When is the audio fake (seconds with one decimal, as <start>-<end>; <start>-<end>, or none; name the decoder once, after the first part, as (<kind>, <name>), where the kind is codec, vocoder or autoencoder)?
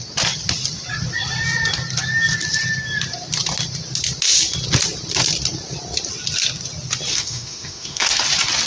7.1-8.2 (autoencoder, DAC-VAE)